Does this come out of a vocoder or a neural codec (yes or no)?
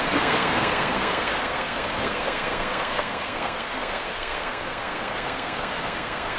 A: yes